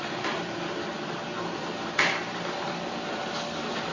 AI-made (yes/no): no